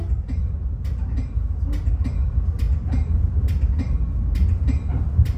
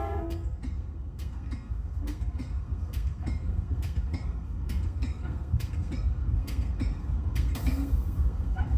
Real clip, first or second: first